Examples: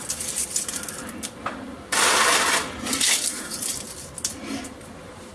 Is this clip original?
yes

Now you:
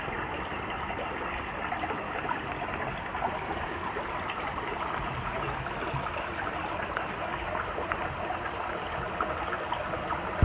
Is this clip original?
yes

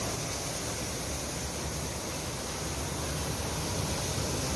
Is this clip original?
yes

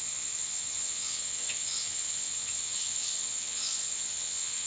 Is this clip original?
no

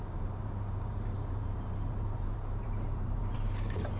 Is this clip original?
no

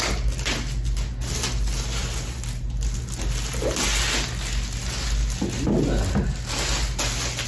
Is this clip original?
yes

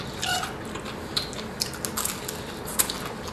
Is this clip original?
yes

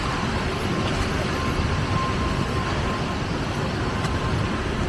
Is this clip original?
yes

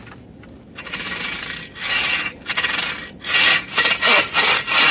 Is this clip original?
yes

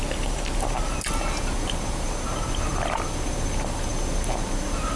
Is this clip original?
yes